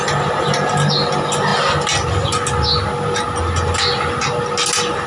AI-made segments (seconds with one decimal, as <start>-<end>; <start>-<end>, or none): none